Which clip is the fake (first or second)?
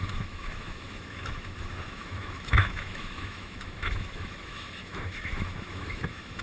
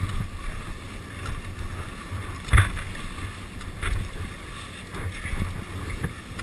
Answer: first